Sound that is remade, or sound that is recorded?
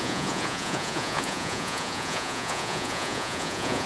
remade